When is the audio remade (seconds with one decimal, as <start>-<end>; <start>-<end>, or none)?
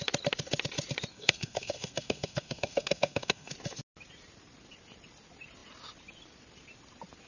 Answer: 1.1-3.5